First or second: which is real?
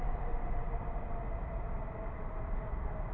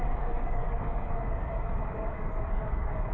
first